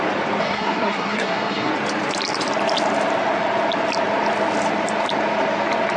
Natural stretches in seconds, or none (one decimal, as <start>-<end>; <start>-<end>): 0.0-0.4; 1.7-6.0